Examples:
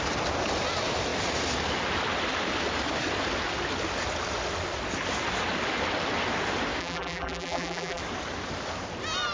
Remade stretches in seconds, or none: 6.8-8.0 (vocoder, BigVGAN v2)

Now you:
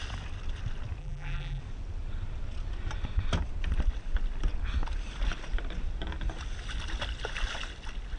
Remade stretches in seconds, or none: 1.0-1.6 (vocoder, BigVGAN v2)